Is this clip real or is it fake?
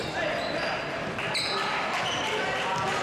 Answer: real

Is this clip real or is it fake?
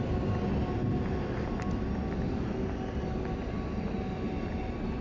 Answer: real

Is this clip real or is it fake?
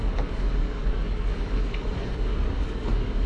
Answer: fake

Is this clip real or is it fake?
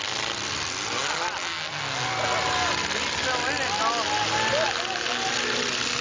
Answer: real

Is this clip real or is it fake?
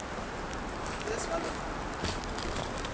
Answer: real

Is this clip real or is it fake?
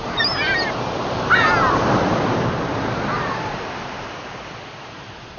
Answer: real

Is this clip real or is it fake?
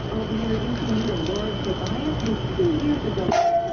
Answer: real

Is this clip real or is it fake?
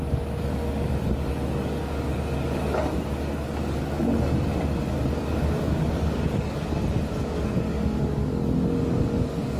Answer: fake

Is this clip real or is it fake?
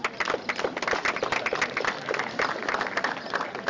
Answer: real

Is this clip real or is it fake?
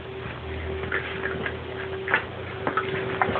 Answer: real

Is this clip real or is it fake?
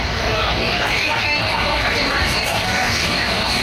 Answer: fake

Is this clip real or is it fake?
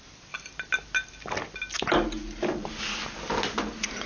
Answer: real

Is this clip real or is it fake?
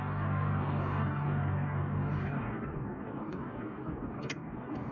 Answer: fake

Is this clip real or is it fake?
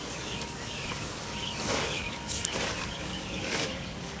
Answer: fake